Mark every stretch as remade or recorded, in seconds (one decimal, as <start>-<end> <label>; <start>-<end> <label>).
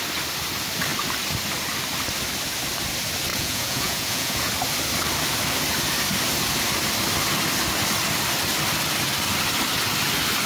0.0-3.3 recorded; 3.3-4.5 remade; 4.5-10.5 recorded